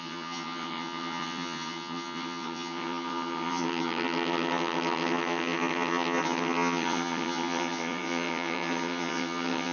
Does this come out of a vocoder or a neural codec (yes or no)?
yes